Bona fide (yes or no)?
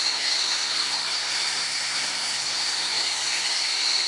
no